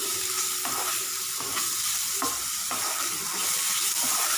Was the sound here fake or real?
fake